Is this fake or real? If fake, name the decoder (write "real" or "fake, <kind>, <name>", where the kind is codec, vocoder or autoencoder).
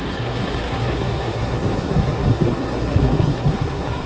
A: fake, codec, SNAC